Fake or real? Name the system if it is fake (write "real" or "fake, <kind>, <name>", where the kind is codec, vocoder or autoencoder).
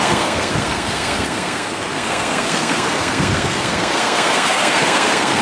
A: fake, codec, SNAC